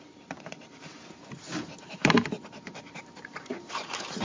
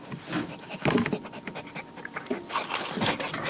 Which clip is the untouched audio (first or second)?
second